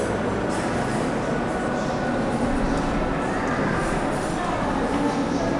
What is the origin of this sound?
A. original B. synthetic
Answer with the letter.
A